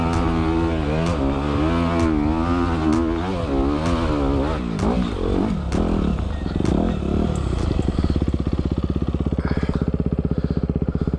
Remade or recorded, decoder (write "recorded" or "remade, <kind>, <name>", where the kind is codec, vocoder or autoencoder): recorded